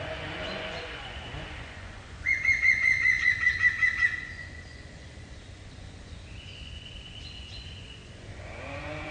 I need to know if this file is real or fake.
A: fake